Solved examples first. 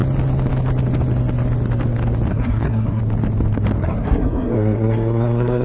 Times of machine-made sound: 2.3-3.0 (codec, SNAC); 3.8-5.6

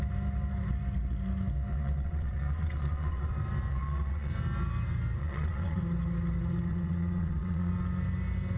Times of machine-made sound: 1.7-3.3 (vocoder, WaveNeXt); 3.7-4.3; 5.2-5.8; 6.7-7.7

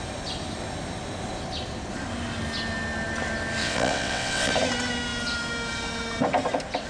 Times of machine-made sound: 3.6-4.5 (vocoder, WaveNeXt)

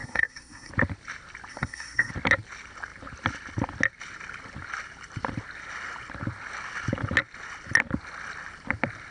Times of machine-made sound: 0.0-0.7 (codec, SNAC); 1.5-2.1

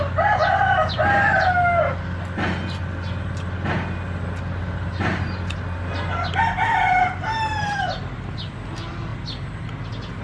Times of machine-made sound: none

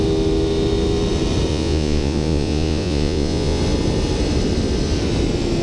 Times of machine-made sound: 1.5-3.6 (vocoder, Vocos)

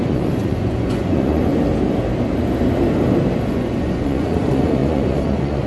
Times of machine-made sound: 0.0-1.5 (vocoder, Vocos); 3.4-5.7

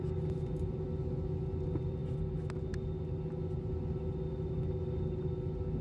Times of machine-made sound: none